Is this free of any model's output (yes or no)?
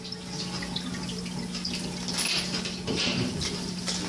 yes